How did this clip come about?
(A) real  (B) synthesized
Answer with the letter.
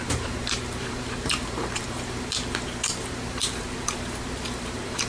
B